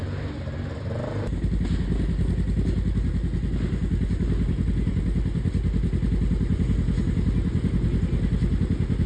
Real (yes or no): yes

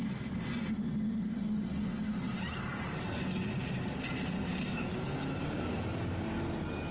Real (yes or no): yes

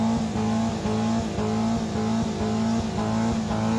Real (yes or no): yes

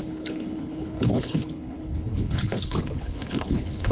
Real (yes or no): no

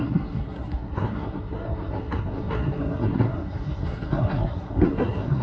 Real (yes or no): no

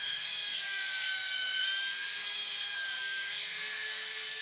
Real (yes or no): no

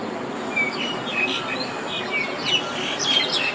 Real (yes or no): yes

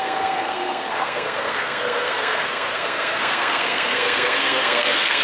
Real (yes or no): no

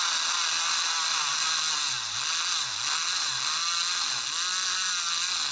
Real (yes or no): yes